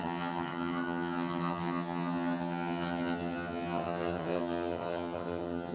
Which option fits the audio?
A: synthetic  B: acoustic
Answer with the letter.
A